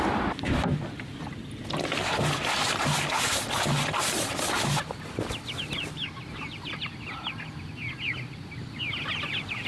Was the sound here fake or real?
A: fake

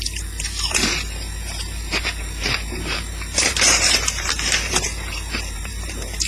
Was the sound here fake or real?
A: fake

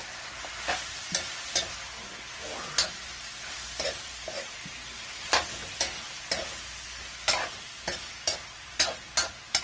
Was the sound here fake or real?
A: real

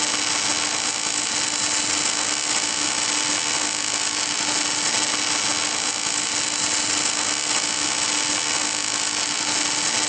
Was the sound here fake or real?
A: real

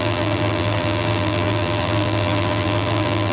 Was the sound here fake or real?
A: fake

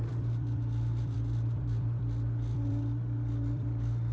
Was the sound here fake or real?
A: fake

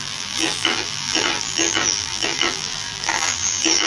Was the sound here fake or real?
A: fake